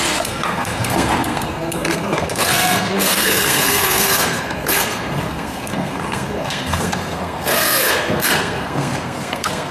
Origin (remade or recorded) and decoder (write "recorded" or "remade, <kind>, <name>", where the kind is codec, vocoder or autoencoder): remade, codec, SNAC